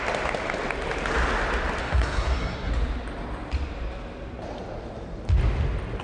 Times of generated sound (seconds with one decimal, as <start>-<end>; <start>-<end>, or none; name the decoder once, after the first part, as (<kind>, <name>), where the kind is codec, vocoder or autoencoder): 1.8-2.7 (codec, SNAC)